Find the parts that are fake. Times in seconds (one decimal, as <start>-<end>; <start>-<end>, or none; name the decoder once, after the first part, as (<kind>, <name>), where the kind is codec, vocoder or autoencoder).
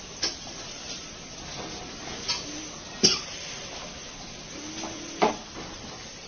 0.0-1.5 (vocoder, BigVGAN v2); 5.3-6.3